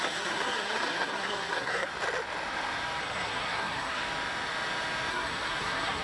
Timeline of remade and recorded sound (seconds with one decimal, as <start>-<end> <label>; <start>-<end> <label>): 0.0-1.9 remade; 1.9-3.0 recorded; 3.0-4.0 remade; 4.0-5.1 recorded; 5.1-6.0 remade